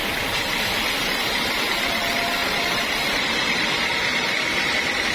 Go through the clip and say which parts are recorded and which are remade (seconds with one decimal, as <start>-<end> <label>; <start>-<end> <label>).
0.0-0.9 recorded; 0.9-5.1 remade